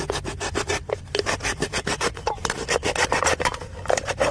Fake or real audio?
real